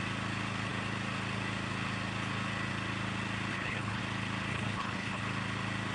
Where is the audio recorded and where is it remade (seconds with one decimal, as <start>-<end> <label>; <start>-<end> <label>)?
0.0-3.5 recorded; 3.5-4.0 remade; 4.0-4.5 recorded; 4.5-5.2 remade; 5.2-5.9 recorded